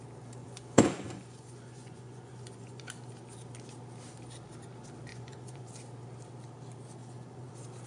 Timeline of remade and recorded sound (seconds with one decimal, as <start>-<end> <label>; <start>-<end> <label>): 0.0-0.4 recorded; 0.4-2.8 remade; 2.8-5.1 recorded; 5.1-5.7 remade; 5.7-7.0 recorded; 7.0-7.5 remade; 7.5-7.9 recorded